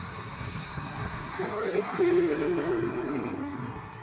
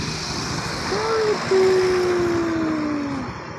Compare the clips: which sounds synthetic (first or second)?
first